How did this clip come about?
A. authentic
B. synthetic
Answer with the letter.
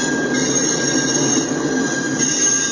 A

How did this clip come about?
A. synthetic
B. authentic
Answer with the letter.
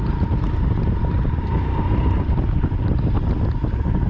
B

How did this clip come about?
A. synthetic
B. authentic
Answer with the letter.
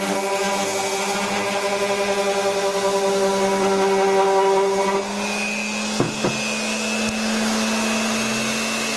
B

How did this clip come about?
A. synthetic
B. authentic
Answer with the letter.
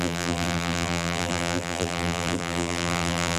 A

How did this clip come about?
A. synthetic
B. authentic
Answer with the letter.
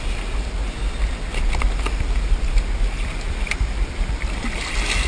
B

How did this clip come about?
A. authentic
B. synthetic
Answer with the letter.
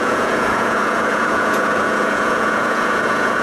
B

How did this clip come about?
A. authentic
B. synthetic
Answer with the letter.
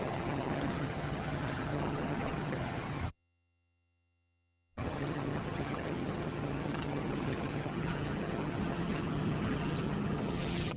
B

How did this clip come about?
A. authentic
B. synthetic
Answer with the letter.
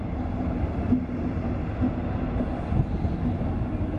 A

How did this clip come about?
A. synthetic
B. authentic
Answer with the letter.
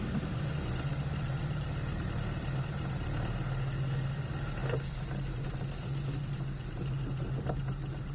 B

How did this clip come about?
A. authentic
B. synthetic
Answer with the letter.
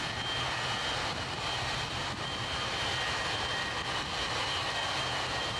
A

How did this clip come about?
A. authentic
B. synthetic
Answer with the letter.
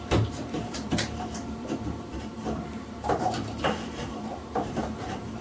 B